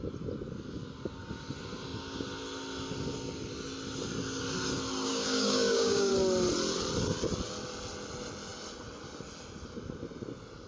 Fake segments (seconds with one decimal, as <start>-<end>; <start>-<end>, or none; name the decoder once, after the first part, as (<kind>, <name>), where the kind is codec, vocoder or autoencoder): 5.1-6.1 (codec, DAC)